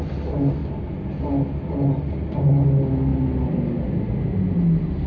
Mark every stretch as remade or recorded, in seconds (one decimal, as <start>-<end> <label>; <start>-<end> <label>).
0.0-5.1 recorded